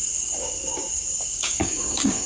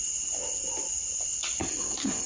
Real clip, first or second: second